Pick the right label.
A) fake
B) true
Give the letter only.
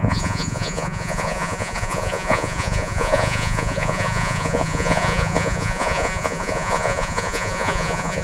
A